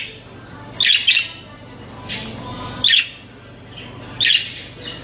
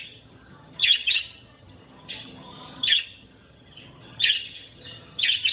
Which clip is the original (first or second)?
first